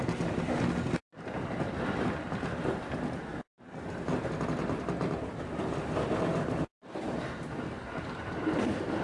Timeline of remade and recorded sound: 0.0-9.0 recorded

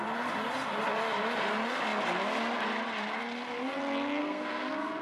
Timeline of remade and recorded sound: 0.0-4.2 recorded; 4.2-5.0 remade

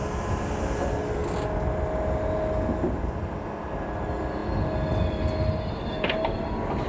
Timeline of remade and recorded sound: 0.0-6.9 recorded

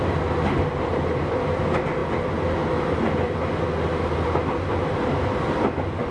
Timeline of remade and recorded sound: 0.0-6.1 recorded

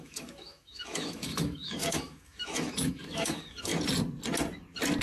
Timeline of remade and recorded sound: 0.0-3.7 remade; 3.7-5.0 recorded

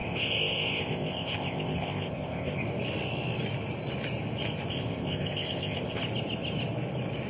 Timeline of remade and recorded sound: 0.0-2.6 remade; 2.6-4.7 recorded; 4.7-6.0 remade; 6.0-7.3 recorded